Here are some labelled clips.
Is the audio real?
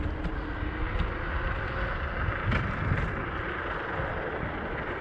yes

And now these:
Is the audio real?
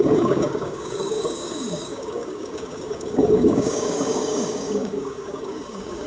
no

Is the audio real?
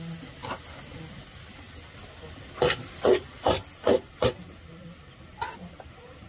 yes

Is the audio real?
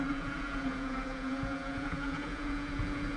no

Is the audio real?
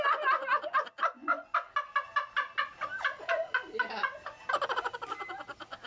yes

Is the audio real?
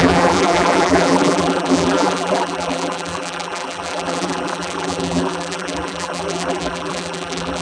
no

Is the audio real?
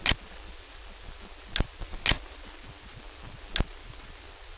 yes